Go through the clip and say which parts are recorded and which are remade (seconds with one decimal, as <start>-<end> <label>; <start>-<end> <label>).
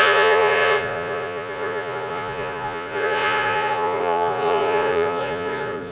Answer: 0.0-5.9 remade